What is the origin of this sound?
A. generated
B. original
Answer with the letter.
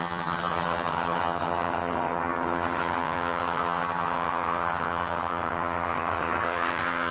A